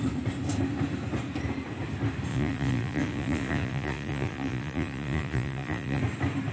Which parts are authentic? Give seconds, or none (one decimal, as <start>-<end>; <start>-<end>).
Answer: 0.0-2.3; 6.0-6.5